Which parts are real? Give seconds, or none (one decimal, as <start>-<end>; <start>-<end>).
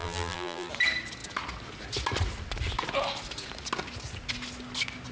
0.7-5.1